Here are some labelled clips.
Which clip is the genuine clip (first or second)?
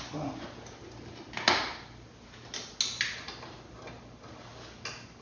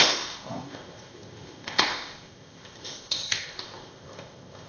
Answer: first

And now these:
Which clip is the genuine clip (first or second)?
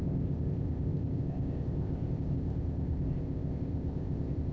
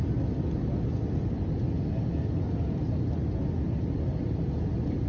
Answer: second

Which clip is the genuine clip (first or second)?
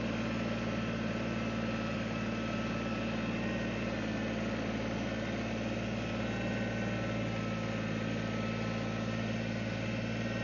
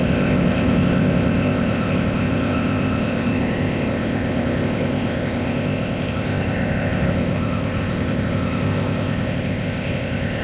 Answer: first